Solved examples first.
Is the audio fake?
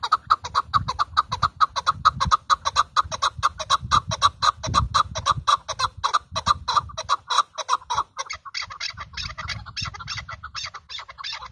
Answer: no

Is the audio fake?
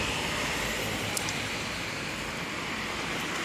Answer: no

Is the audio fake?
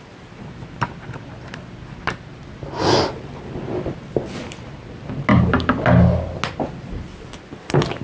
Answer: no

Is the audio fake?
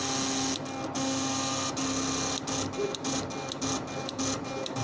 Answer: no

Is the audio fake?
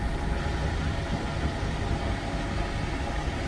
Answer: no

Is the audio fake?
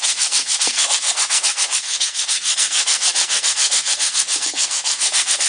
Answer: yes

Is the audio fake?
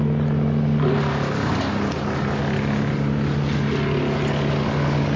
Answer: no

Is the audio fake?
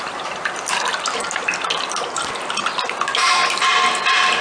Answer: no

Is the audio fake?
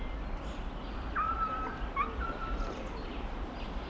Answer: no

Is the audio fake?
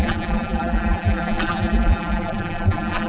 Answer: yes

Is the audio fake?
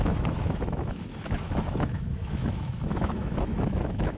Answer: yes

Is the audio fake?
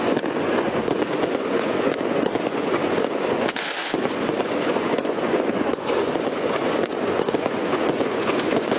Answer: yes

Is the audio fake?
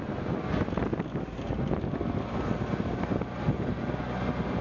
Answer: no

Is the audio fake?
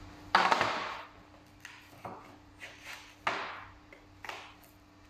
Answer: no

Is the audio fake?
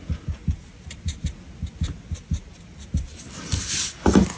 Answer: no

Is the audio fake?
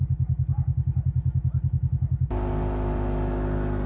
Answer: no